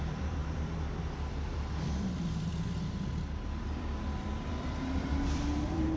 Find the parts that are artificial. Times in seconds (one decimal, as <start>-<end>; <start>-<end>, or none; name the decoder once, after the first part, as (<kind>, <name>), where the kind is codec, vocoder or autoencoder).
0.0-6.0 (vocoder, BigVGAN v2)